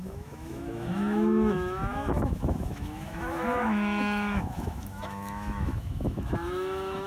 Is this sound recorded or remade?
remade